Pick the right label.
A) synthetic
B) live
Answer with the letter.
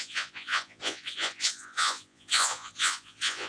A